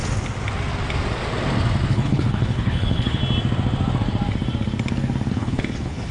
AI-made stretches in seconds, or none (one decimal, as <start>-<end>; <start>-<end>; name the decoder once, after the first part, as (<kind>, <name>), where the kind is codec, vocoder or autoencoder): 1.9-3.2 (codec, HILCodec); 5.3-6.1